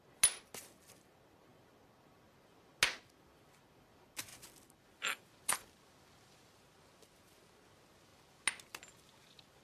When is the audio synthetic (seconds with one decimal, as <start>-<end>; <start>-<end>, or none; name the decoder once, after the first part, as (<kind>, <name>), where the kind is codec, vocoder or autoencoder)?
none